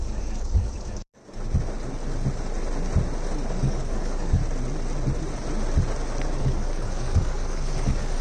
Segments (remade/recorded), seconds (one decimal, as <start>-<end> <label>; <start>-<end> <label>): 0.0-1.2 remade; 1.2-3.5 recorded; 3.5-4.4 remade; 4.4-6.4 recorded; 6.4-8.2 remade